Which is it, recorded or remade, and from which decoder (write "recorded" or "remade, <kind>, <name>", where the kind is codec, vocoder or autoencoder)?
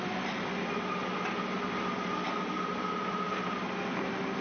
recorded